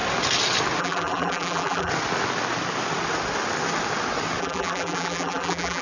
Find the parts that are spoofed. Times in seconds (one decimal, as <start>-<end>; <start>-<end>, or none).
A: 0.8-1.9; 4.4-5.8